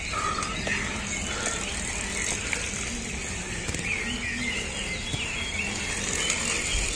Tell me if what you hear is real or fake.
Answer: real